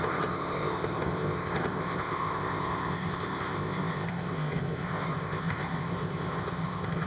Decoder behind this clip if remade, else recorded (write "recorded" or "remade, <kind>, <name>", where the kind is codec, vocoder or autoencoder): remade, codec, ZipCodec